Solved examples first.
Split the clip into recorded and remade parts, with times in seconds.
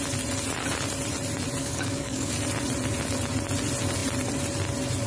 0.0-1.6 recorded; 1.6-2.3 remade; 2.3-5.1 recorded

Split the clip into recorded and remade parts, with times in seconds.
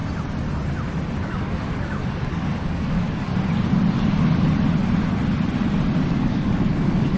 0.0-1.2 recorded; 1.2-3.3 remade; 3.3-6.1 recorded; 6.1-7.2 remade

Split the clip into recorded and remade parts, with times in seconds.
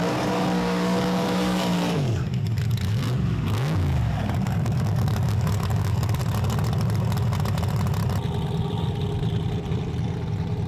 0.0-6.2 remade; 6.2-10.7 recorded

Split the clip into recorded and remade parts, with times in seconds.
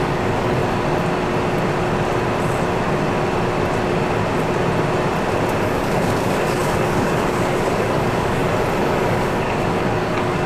0.0-0.6 remade; 0.6-5.6 recorded; 5.6-8.4 remade; 8.4-9.1 recorded; 9.1-10.5 remade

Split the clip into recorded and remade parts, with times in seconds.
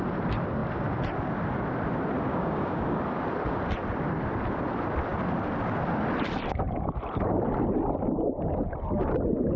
0.0-2.3 recorded; 2.3-3.0 remade; 3.0-9.6 recorded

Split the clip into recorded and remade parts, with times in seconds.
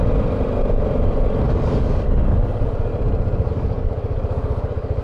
0.0-1.5 recorded; 1.5-2.9 remade; 2.9-3.5 recorded; 3.5-5.0 remade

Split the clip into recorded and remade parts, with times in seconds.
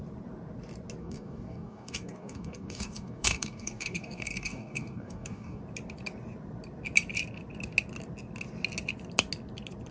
0.0-1.0 recorded; 1.0-5.6 remade; 5.6-9.9 recorded